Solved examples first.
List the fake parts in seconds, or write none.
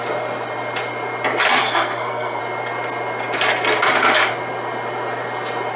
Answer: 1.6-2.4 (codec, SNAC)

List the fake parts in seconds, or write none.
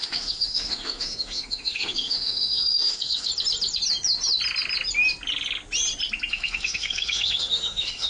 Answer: 0.0-3.3 (autoencoder, DAC-VAE); 6.3-8.1